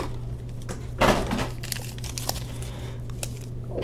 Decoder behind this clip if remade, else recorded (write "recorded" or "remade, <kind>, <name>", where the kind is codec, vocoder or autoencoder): recorded